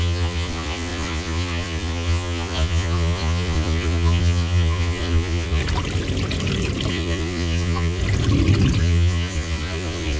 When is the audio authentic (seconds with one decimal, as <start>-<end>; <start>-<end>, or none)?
5.6-6.9; 8.0-8.8